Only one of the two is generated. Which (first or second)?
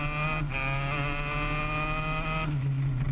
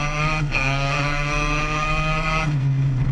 second